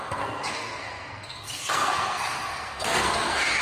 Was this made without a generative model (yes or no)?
no